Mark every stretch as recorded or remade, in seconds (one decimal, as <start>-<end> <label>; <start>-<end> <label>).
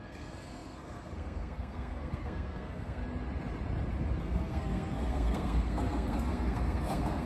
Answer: 0.0-3.0 remade; 3.0-4.2 recorded; 4.2-7.3 remade